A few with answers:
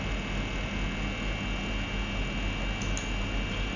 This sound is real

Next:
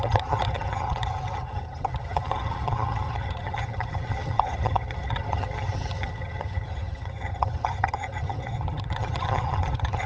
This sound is fake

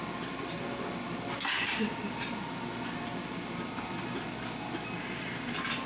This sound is real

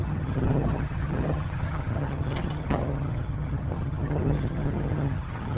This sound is fake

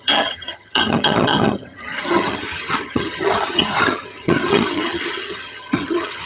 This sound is fake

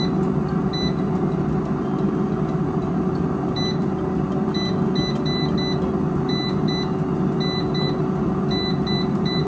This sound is real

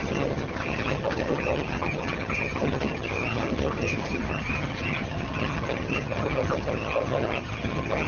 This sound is fake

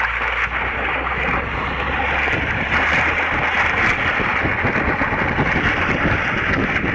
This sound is real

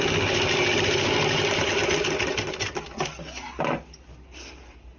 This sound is real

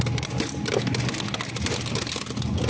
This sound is real